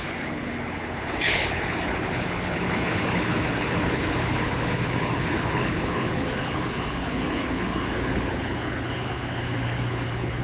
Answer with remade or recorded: remade